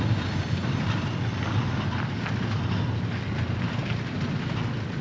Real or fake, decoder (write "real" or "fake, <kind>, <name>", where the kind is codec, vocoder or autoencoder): real